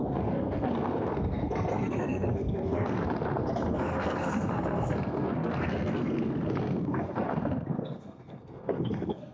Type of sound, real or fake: fake